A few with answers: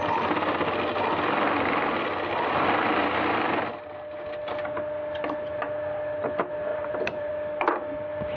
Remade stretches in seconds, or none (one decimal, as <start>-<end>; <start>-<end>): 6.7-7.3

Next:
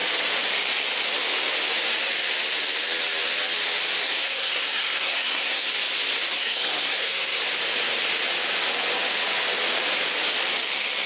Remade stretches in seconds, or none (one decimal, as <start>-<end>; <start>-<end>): 4.0-5.7; 6.3-7.4

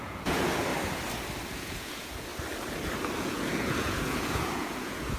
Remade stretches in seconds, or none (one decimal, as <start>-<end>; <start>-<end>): 0.0-0.7; 1.5-2.3; 3.2-5.2